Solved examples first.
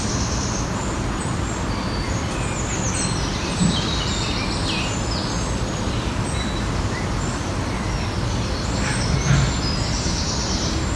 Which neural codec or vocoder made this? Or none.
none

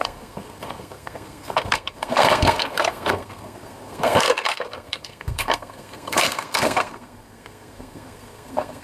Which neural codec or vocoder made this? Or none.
codec, SNAC